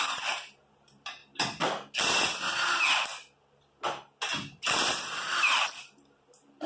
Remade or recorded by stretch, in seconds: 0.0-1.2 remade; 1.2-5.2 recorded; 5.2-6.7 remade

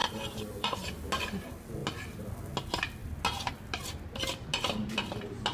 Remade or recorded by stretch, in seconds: 0.0-0.9 remade; 0.9-5.5 recorded

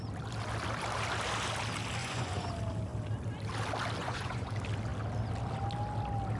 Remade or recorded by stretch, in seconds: 0.0-2.0 recorded; 2.0-2.5 remade; 2.5-4.0 recorded; 4.0-4.5 remade; 4.5-6.4 recorded

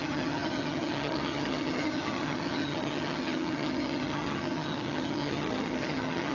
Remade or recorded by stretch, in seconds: 0.0-6.3 remade